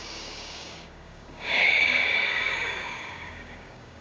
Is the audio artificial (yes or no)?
yes